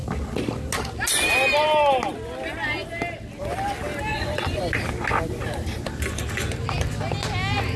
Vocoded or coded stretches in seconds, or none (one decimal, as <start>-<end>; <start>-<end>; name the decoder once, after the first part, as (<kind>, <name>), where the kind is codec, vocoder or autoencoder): 4.1-4.6 (vocoder, Vocos)